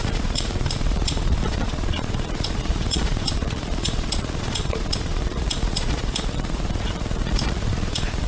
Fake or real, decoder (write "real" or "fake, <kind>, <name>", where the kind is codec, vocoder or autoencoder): fake, vocoder, Vocos